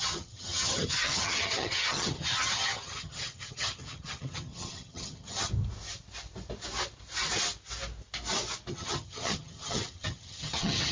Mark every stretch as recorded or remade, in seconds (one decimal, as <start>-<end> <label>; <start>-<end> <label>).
0.0-5.5 remade; 5.5-8.7 recorded; 8.7-10.9 remade